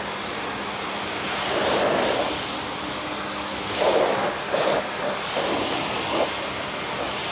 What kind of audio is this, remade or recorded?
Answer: recorded